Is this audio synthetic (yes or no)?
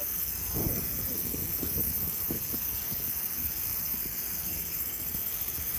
yes